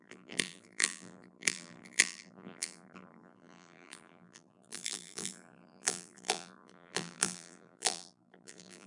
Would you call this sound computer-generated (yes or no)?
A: yes